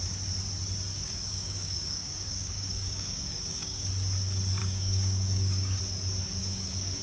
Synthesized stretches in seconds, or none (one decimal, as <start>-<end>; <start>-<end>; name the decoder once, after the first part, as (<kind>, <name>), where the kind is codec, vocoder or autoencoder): 0.9-3.9 (codec, DAC); 4.6-5.8; 6.4-7.0